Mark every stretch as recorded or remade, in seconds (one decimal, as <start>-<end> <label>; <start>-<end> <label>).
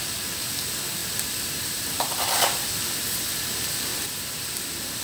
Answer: 0.0-1.0 recorded; 1.0-3.5 remade; 3.5-3.9 recorded; 3.9-5.0 remade